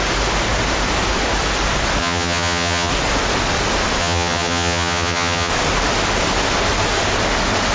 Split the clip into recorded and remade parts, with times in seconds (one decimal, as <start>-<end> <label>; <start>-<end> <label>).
0.0-2.0 recorded; 2.0-2.9 remade; 2.9-4.0 recorded; 4.0-5.5 remade; 5.5-7.7 recorded